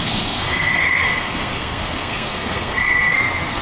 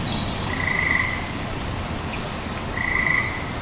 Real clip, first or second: second